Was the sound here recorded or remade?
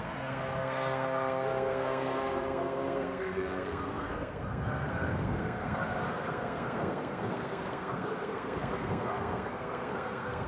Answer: remade